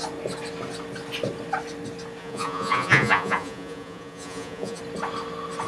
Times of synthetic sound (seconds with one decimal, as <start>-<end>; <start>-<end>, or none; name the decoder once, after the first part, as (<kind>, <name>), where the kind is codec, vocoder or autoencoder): 2.2-4.8 (vocoder, Vocos)